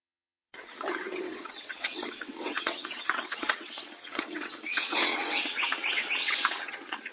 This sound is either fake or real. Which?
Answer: fake